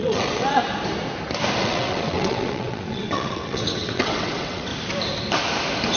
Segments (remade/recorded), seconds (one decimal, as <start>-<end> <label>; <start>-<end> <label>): 0.0-0.6 remade; 0.6-1.6 recorded; 1.6-4.7 remade; 4.7-6.0 recorded